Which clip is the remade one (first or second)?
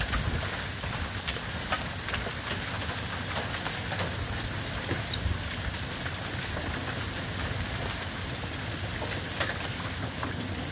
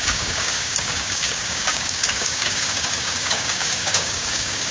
second